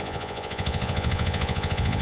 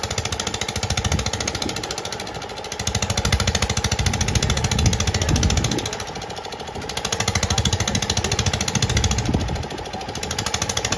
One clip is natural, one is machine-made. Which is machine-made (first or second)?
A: first